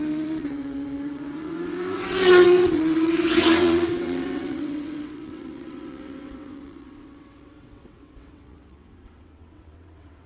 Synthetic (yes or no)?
yes